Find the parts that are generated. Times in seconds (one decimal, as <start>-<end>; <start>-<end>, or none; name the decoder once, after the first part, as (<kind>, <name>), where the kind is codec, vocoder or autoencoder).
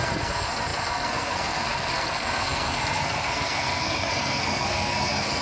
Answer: 0.0-5.4 (codec, SNAC)